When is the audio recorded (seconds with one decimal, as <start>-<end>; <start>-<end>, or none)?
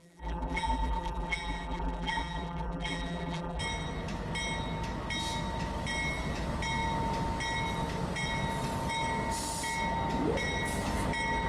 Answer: 3.6-11.5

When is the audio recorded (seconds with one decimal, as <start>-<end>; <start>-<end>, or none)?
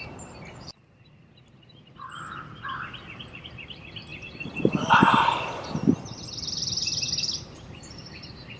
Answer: none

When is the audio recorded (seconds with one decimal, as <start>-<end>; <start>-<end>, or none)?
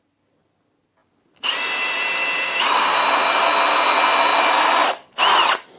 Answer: 0.0-1.0; 2.8-4.3; 5.2-5.8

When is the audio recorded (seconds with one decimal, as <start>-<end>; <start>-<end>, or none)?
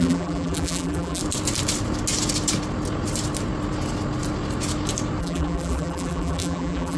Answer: 1.2-5.2